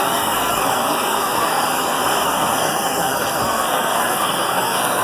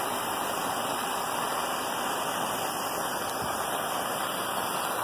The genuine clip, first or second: second